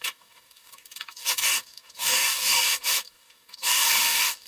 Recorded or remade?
remade